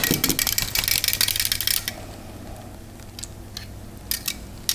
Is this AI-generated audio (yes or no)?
no